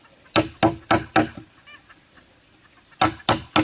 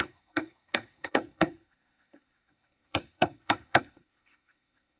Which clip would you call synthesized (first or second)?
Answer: second